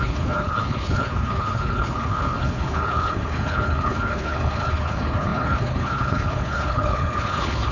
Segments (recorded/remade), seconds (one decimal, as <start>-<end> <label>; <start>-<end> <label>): 0.0-7.7 remade